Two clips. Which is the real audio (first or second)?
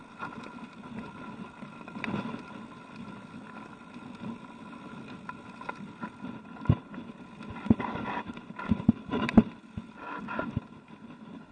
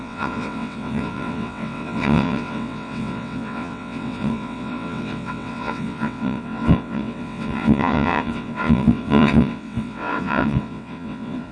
first